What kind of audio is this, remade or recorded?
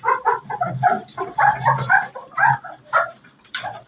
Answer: remade